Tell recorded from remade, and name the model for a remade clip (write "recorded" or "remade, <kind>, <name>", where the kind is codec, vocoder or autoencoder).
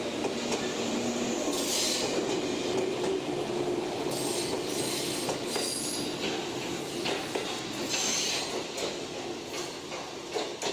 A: recorded